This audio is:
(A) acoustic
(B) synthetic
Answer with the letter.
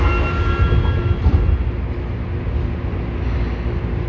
A